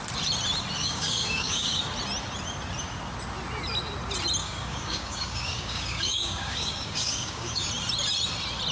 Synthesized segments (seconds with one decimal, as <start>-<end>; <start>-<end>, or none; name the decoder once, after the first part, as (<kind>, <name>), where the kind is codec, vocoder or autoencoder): 0.8-1.8 (codec, DAC); 4.4-7.7